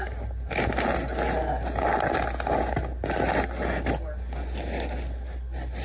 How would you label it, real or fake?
real